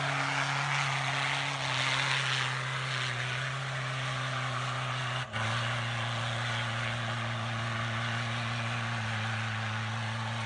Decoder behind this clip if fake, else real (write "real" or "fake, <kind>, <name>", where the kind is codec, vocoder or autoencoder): real